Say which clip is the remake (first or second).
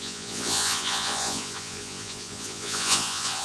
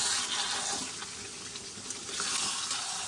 first